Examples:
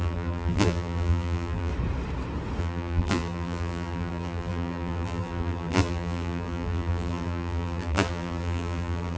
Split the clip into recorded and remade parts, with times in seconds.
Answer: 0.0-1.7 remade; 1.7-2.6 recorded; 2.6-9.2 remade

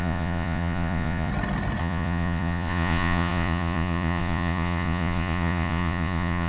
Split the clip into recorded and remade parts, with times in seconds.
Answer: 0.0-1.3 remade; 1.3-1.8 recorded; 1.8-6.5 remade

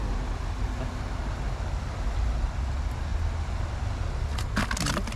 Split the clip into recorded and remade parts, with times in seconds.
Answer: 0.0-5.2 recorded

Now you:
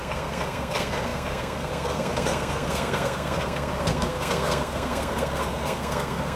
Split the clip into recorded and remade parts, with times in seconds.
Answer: 0.0-6.4 remade

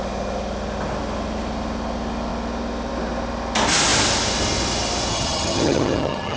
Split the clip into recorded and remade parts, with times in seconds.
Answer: 0.0-5.1 recorded; 5.1-6.4 remade

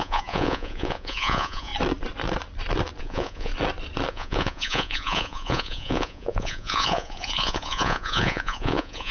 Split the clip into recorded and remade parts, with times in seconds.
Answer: 0.0-1.7 remade; 1.7-3.0 recorded; 3.0-3.5 remade; 3.5-4.1 recorded; 4.1-9.1 remade